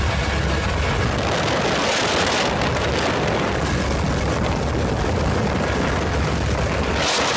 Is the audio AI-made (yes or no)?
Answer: no